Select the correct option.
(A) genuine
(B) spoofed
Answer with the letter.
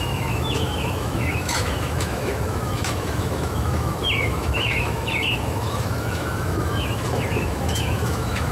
B